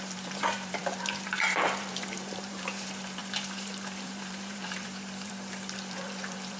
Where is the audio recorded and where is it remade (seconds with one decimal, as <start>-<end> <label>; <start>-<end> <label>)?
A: 0.0-6.6 remade